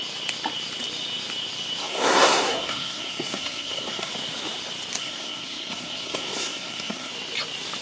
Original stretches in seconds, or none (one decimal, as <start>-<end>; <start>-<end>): 0.0-1.8; 4.1-5.0; 7.1-7.8